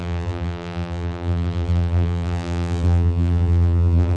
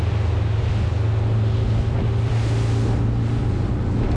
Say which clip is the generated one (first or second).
first